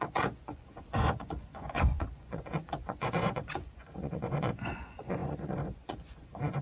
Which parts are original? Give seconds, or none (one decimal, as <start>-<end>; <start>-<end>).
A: none